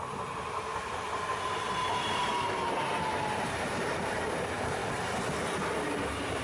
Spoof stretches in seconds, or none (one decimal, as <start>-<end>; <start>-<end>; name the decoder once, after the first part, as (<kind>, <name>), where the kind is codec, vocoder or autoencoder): 0.0-4.8 (vocoder, BigVGAN v2); 6.0-6.4